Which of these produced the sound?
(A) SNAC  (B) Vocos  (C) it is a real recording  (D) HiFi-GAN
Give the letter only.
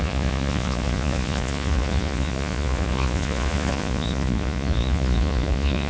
B